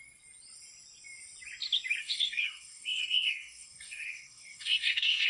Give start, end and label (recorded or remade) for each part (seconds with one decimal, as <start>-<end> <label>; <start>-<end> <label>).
0.0-2.0 recorded; 2.0-5.3 remade